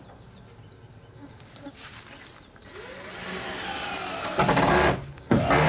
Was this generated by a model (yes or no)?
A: no